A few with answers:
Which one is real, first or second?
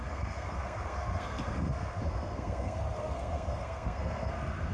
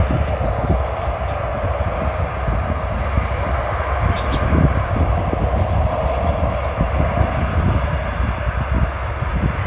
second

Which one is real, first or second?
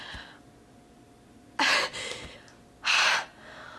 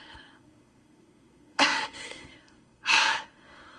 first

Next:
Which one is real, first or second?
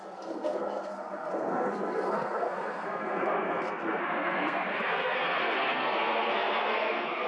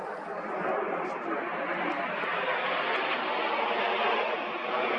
second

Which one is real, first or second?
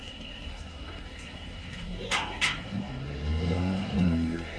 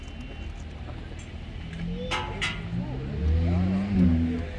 second